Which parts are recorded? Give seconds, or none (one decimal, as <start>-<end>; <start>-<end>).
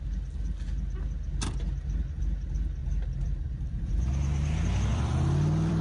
0.0-2.8; 4.1-4.9